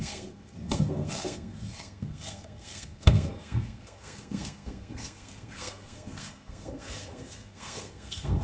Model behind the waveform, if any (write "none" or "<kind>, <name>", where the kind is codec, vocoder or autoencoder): codec, SNAC